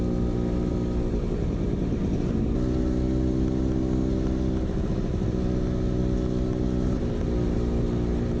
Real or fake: real